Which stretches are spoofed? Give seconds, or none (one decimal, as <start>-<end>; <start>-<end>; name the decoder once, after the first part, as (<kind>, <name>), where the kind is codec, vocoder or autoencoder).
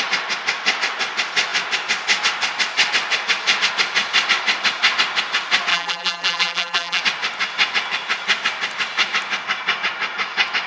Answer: 5.7-7.0 (vocoder, BigVGAN v2)